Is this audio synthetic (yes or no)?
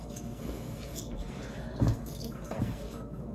yes